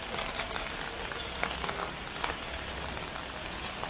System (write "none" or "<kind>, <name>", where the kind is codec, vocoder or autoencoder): none